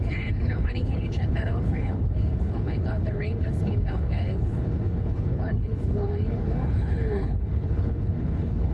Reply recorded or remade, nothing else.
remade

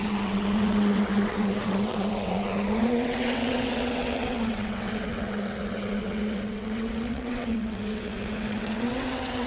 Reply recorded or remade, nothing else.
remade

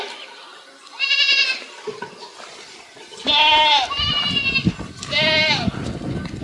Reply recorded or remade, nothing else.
recorded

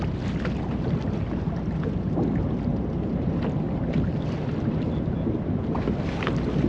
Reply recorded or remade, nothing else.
recorded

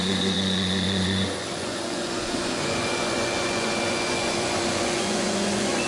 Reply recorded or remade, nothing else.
remade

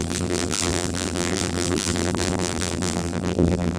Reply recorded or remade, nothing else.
remade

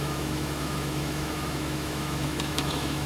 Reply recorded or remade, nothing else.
remade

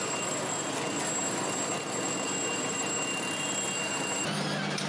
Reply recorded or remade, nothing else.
recorded